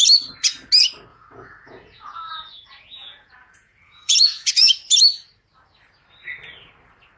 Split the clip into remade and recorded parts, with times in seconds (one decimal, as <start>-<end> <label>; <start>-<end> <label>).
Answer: 0.0-1.1 recorded; 1.1-4.5 remade; 4.5-7.2 recorded